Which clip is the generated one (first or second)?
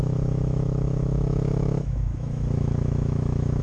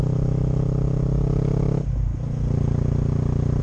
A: first